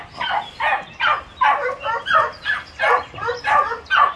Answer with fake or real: fake